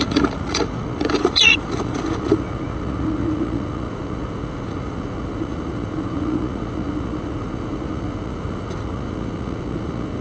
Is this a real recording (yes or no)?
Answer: no